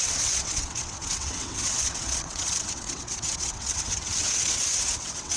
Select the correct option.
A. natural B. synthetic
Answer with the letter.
B